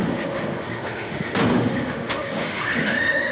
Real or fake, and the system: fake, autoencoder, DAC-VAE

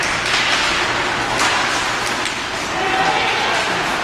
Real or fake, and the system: real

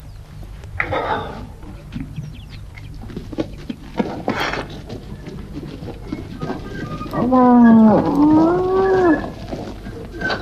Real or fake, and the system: real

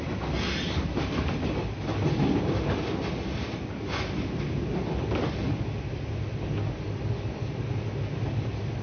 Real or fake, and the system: real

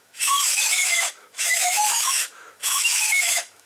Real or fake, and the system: fake, autoencoder, DAC-VAE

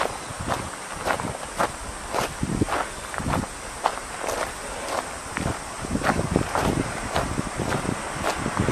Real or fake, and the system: real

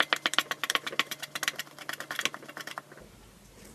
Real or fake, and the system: real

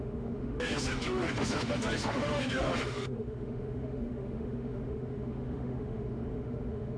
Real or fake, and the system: fake, autoencoder, DAC-VAE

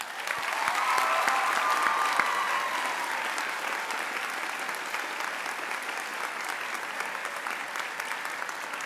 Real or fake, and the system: real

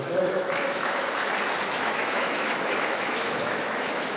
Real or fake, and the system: fake, autoencoder, DAC-VAE